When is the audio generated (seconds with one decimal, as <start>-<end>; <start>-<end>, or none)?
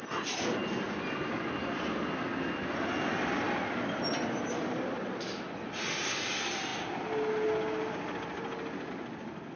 none